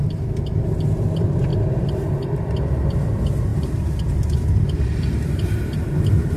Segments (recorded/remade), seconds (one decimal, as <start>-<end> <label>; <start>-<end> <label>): 0.0-1.5 recorded; 1.5-2.5 remade; 2.5-3.5 recorded; 3.5-5.8 remade; 5.8-6.4 recorded